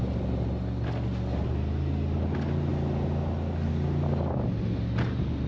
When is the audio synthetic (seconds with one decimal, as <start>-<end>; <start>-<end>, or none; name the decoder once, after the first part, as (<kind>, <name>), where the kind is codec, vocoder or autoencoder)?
none